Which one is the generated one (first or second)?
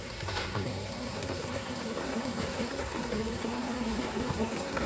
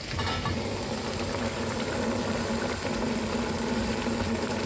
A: first